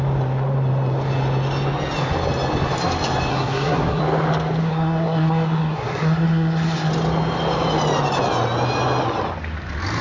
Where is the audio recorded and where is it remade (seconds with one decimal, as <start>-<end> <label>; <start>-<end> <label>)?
0.0-3.3 recorded; 3.3-4.0 remade; 4.0-4.6 recorded; 4.6-6.9 remade; 6.9-10.0 recorded